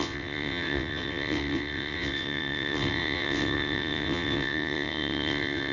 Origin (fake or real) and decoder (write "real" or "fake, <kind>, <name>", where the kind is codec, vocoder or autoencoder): fake, vocoder, WaveNeXt